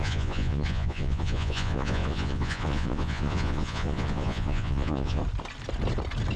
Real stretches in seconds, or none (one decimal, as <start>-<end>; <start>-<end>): 5.2-6.4